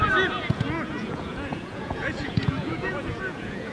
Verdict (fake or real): fake